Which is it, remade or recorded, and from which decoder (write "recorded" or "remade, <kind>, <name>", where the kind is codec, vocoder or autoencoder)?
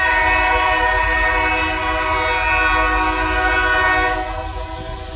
recorded